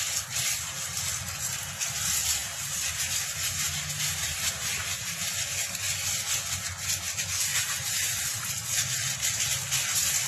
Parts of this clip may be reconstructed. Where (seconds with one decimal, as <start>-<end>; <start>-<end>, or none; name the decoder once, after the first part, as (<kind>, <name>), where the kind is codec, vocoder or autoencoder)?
2.4-5.0 (vocoder, BigVGAN v2); 7.5-8.5